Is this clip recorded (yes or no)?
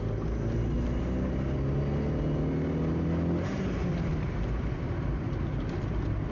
yes